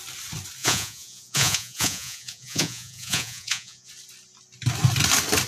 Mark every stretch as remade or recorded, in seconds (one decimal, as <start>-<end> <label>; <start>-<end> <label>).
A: 0.0-0.6 recorded; 0.6-3.9 remade; 3.9-5.5 recorded

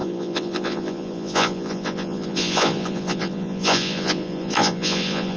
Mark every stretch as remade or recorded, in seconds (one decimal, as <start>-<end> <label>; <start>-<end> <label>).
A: 0.0-5.4 remade

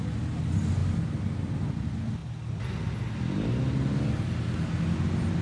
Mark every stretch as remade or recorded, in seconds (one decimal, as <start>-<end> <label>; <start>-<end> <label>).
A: 0.0-5.4 recorded